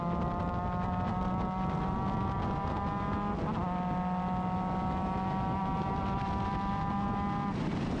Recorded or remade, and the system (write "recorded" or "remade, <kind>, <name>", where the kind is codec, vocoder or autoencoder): recorded